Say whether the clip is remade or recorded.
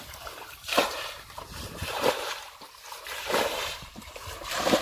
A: remade